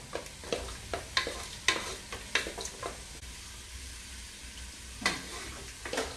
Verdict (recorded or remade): recorded